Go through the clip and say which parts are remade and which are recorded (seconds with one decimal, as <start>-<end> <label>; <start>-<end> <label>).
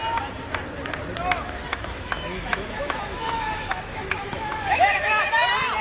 0.0-1.7 recorded; 1.7-5.2 remade; 5.2-5.8 recorded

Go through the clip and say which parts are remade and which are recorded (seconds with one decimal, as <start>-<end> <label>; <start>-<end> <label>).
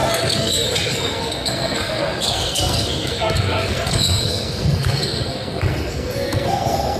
0.0-7.0 remade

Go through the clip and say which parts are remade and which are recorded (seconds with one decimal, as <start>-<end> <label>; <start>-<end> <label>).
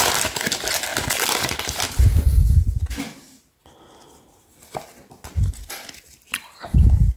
0.0-7.2 recorded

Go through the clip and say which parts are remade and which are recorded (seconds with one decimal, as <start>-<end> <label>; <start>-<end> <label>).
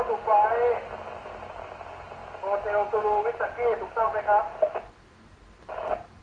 0.0-6.2 recorded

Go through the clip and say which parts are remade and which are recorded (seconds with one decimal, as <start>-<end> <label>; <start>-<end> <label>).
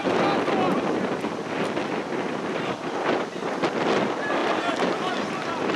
0.0-1.8 recorded; 1.8-2.6 remade; 2.6-4.4 recorded; 4.4-5.1 remade; 5.1-5.8 recorded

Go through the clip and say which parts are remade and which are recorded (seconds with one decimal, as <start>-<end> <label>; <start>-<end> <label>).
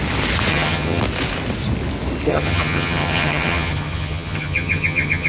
0.0-0.5 recorded; 0.5-1.0 remade; 1.0-2.3 recorded; 2.3-5.3 remade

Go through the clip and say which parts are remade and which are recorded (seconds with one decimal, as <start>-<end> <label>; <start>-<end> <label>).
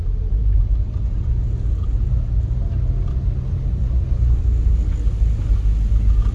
0.0-6.3 recorded